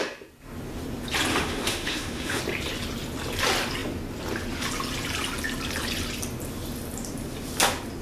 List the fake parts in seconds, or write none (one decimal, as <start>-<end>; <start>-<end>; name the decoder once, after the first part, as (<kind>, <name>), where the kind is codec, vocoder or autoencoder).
1.3-2.4 (autoencoder, DAC-VAE)